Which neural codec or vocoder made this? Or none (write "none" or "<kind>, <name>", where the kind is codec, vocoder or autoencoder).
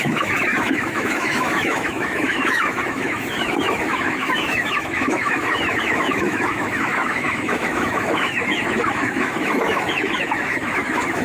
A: autoencoder, DAC-VAE